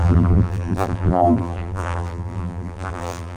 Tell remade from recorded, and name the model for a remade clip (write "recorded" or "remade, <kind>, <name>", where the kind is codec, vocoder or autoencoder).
remade, vocoder, BigVGAN v2